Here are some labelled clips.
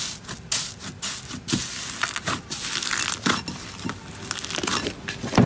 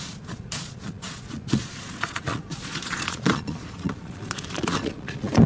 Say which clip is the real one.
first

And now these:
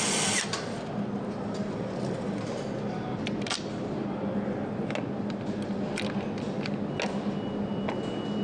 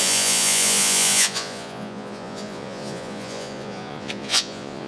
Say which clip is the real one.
first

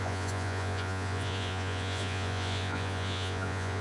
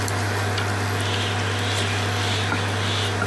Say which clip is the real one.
second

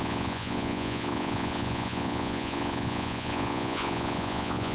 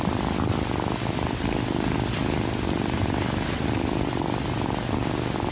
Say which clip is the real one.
second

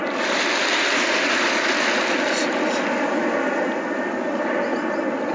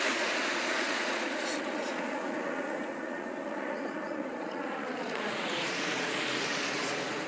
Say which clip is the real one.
first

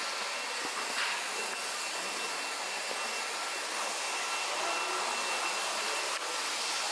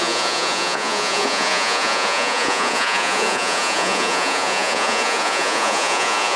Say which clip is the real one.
first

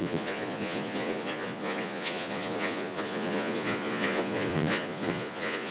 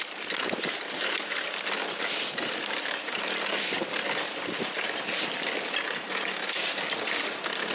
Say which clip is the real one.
second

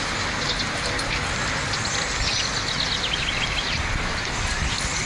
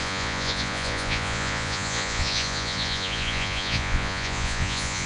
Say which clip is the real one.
first